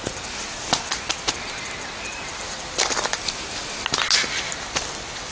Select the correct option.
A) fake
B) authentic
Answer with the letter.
B